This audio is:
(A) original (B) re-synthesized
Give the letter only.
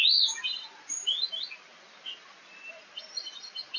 A